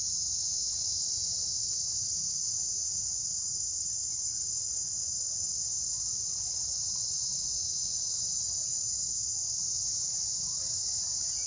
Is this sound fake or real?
fake